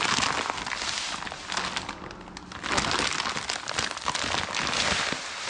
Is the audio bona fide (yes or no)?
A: yes